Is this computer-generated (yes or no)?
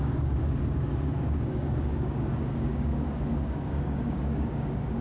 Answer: yes